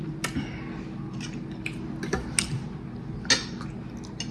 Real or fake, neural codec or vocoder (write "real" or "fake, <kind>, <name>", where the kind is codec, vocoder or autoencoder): real